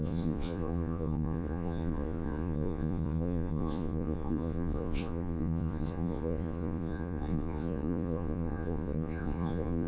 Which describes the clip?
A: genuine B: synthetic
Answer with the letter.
B